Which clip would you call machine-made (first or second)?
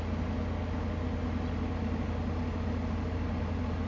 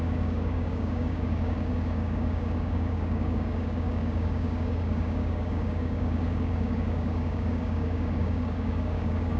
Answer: second